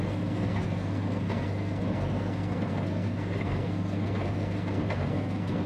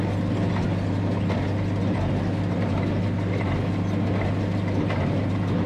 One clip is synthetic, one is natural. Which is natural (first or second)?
second